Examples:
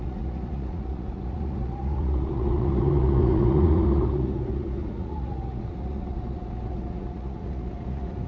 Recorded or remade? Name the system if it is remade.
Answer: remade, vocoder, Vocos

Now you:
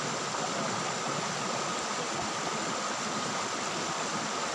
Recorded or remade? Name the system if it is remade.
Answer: recorded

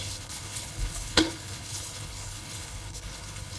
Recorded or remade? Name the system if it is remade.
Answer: remade, codec, HILCodec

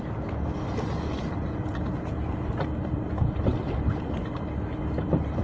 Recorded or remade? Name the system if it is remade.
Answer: recorded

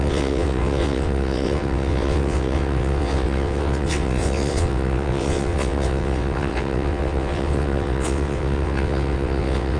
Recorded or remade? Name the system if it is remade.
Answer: remade, vocoder, WaveNeXt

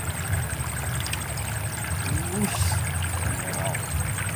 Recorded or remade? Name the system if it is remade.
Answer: recorded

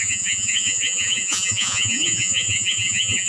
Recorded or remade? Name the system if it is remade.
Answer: remade, vocoder, Vocos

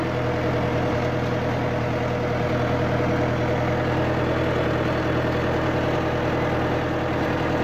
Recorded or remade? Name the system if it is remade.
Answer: recorded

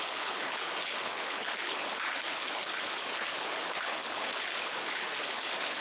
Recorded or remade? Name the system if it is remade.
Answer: remade, codec, HILCodec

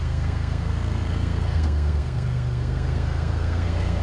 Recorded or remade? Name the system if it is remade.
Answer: remade, codec, SNAC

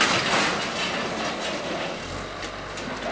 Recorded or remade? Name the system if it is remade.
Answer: recorded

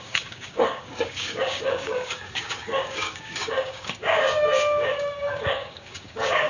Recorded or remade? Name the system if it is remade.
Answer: remade, codec, DAC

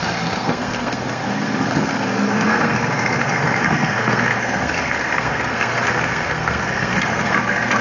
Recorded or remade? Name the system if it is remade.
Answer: remade, codec, SNAC